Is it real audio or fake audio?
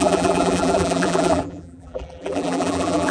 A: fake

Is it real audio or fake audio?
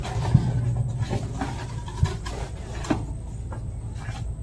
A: real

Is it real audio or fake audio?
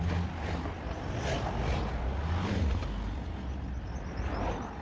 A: real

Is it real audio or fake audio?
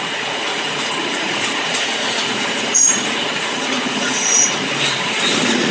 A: fake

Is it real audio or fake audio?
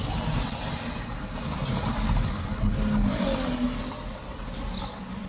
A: real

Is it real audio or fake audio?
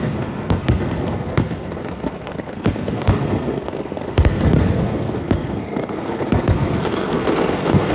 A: fake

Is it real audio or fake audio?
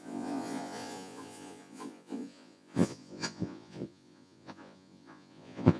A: fake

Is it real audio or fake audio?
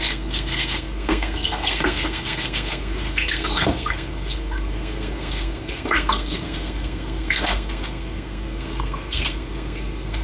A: fake